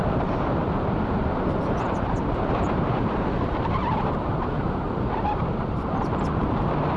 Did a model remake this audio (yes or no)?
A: yes